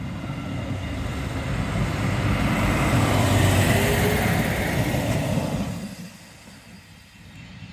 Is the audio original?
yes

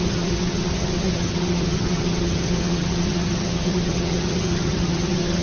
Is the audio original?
no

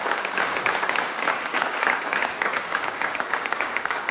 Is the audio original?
no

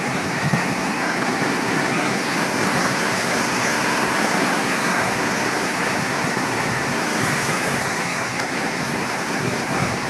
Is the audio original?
no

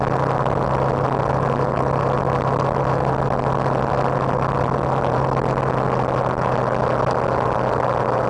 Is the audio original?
yes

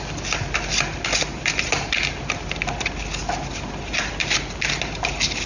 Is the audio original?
yes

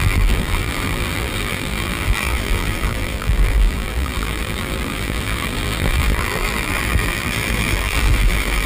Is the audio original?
no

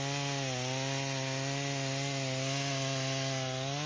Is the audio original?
yes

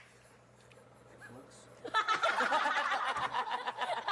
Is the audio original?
no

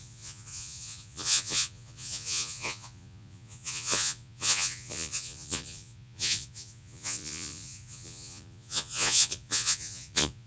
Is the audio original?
no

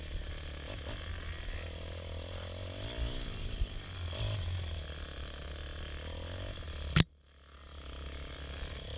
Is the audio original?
yes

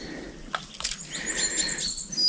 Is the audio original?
yes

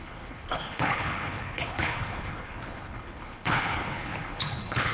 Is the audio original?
no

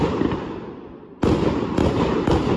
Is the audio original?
yes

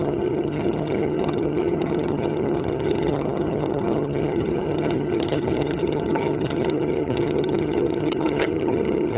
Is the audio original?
no